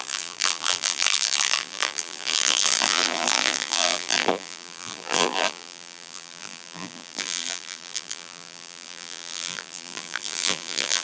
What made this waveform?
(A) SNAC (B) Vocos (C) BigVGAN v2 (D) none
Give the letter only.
C